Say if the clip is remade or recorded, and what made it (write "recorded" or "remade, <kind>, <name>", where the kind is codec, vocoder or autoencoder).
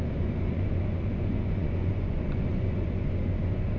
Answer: remade, vocoder, Vocos